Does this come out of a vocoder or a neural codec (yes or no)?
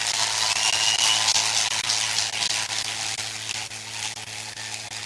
no